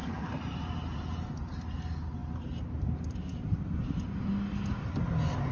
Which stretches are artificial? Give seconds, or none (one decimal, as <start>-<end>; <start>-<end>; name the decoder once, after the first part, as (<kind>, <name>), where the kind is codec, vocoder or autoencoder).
0.0-1.4 (vocoder, BigVGAN v2)